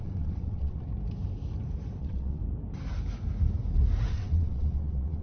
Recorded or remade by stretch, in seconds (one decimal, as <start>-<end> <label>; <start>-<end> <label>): 0.0-0.9 remade; 0.9-2.0 recorded; 2.0-2.4 remade; 2.4-4.1 recorded; 4.1-5.2 remade